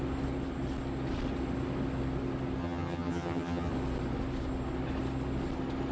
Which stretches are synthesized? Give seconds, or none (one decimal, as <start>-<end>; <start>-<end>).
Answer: 2.6-3.7